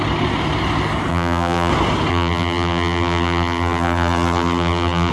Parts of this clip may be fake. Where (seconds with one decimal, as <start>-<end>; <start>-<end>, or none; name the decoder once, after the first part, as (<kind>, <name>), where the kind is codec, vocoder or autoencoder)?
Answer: 1.1-1.7 (vocoder, BigVGAN v2); 2.1-5.1

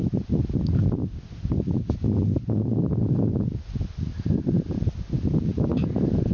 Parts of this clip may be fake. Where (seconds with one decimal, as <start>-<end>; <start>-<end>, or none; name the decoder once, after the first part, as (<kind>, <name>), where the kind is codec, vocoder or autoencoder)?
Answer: none

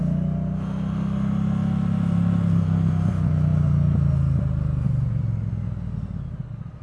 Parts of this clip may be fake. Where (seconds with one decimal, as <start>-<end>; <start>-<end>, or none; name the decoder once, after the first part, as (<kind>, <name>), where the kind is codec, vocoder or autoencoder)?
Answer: none

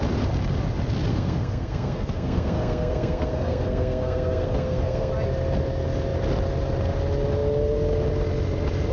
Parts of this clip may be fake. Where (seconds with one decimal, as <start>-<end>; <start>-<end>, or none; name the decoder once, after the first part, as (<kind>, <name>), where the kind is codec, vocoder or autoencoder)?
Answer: 1.1-5.1 (codec, SNAC)

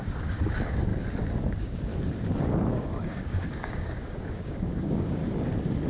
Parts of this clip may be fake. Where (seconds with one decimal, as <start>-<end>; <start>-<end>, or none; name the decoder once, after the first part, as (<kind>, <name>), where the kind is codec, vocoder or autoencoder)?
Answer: 0.0-0.9 (codec, DAC); 1.5-1.9; 2.7-5.2

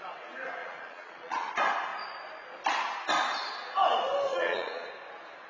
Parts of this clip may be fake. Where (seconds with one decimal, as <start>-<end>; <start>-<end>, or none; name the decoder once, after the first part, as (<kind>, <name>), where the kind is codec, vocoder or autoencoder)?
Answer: 0.6-1.5 (vocoder, Vocos); 4.3-4.9

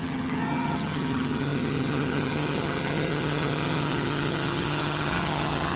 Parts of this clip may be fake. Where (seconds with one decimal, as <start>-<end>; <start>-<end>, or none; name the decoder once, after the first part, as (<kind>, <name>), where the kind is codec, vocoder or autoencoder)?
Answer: 0.0-5.8 (vocoder, HiFi-GAN)

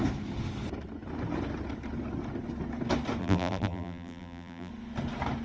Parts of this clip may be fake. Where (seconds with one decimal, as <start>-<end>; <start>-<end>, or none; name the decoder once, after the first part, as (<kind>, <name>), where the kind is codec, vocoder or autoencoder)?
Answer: 3.2-4.7 (vocoder, BigVGAN v2)